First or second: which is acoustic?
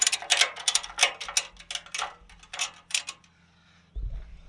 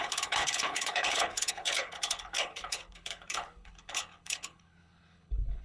first